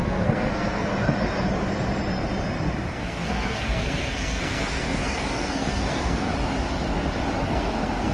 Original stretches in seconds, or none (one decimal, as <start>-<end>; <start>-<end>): 0.9-2.9; 6.3-7.4